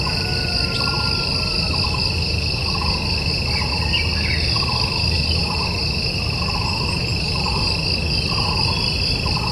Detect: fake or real real